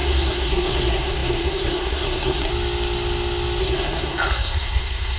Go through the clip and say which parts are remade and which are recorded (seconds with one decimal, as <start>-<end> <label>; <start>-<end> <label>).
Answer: 0.0-2.5 remade; 2.5-3.6 recorded; 3.6-5.2 remade